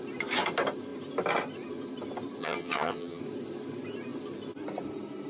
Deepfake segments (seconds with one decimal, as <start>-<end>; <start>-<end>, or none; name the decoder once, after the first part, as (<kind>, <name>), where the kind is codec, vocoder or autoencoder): 2.4-3.2 (vocoder, HiFi-GAN)